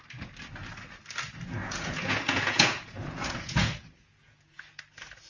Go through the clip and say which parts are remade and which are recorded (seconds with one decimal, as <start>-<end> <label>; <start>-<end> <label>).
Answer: 0.0-1.6 recorded; 1.6-4.8 remade; 4.8-5.3 recorded